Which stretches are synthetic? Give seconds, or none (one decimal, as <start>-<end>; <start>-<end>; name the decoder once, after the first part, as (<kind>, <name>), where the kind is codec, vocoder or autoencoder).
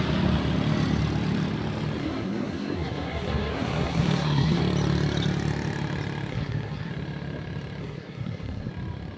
2.0-4.6 (codec, SNAC); 6.3-6.9; 7.8-8.7